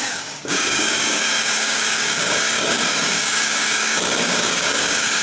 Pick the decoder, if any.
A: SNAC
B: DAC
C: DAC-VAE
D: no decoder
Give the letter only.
B